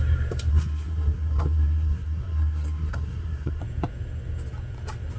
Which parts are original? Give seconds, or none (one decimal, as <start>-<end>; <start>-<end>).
0.0-0.5; 3.6-5.2